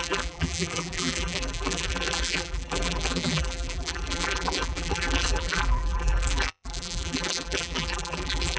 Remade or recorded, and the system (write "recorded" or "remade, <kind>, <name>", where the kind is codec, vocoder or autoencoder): remade, vocoder, BigVGAN v2